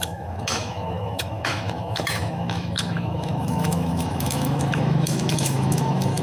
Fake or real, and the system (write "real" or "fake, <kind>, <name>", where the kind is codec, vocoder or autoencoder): fake, autoencoder, DAC-VAE